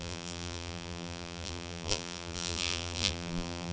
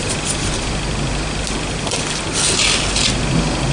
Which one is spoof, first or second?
first